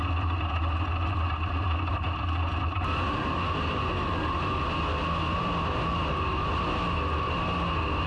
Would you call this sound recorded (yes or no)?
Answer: yes